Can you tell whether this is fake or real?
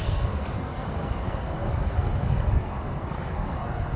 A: fake